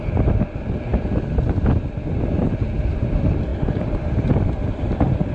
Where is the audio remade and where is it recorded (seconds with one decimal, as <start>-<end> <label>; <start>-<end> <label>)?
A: 0.0-0.9 recorded; 0.9-1.7 remade; 1.7-3.5 recorded; 3.5-5.3 remade